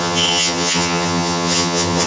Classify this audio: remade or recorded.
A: remade